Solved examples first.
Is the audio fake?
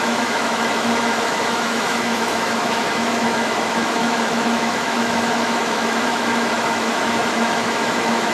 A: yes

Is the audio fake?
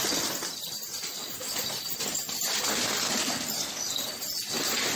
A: no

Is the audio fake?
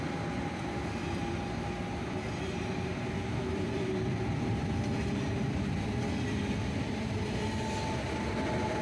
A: no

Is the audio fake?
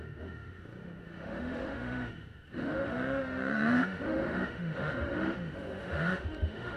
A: yes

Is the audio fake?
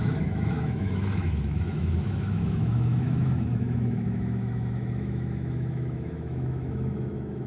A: yes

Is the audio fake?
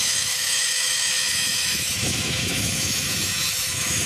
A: yes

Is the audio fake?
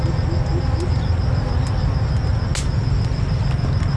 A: no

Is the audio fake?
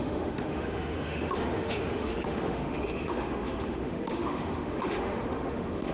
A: yes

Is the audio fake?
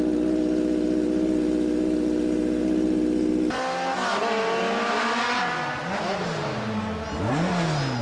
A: no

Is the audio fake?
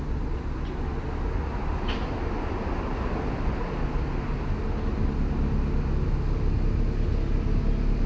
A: no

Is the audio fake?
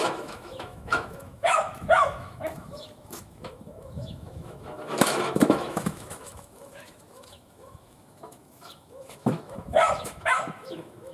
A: yes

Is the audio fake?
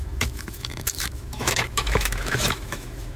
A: yes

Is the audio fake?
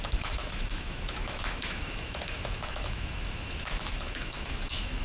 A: yes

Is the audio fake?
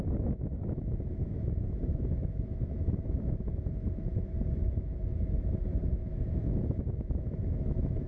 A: yes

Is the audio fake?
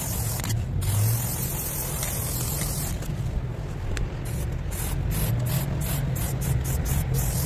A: no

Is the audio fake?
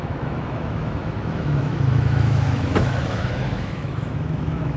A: yes